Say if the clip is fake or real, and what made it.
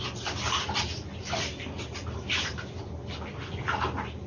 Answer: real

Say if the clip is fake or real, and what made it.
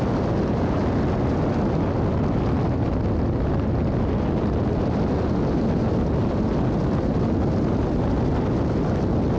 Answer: real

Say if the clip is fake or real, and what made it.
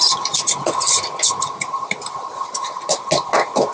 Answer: real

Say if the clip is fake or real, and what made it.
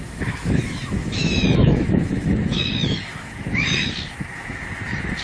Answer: fake, autoencoder, DAC-VAE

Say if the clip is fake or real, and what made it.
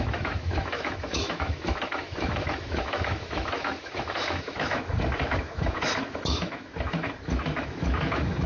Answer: fake, autoencoder, DAC-VAE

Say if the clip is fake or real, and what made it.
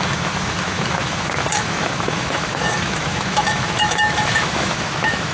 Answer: fake, autoencoder, DAC-VAE